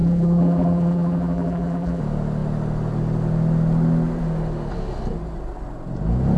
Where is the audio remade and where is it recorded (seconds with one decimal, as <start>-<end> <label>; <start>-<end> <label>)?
0.0-2.0 remade; 2.0-6.4 recorded